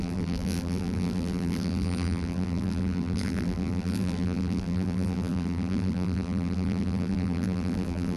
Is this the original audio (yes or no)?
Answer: no